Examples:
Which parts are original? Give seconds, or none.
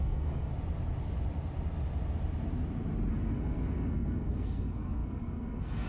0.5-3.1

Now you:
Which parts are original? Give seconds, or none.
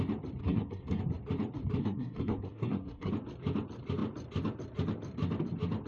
0.0-0.4; 1.0-1.8; 3.1-5.9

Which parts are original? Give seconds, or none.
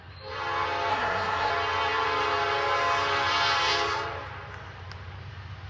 0.0-0.9; 1.5-5.7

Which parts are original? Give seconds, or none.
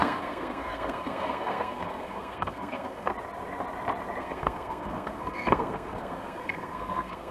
3.1-4.2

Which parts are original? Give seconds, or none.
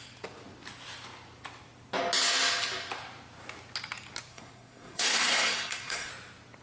0.0-4.3; 6.1-6.6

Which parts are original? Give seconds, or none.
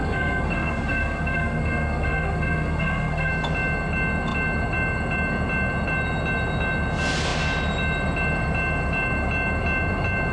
3.3-10.3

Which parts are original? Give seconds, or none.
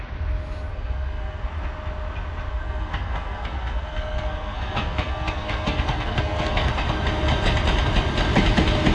0.0-0.7; 1.5-2.5; 6.7-8.9